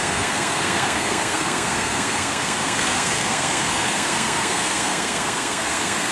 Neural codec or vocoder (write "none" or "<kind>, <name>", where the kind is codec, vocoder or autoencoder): codec, SNAC